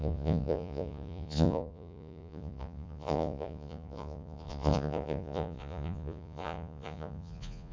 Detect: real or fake fake